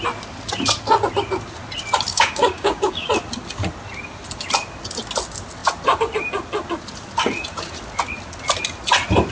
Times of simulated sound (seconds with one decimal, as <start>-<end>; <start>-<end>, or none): 2.1-3.1